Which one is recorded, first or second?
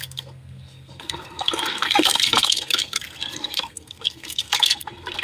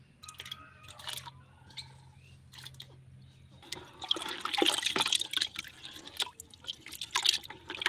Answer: second